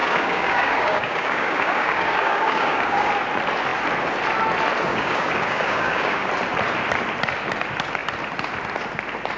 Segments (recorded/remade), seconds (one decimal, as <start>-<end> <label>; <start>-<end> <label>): 0.0-3.1 remade; 3.1-4.9 recorded; 4.9-6.3 remade; 6.3-9.4 recorded